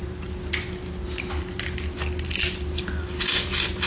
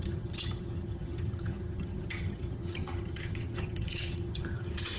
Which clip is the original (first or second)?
first